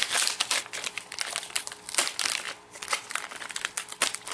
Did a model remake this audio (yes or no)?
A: no